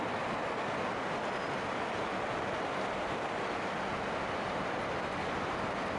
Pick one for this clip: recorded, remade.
recorded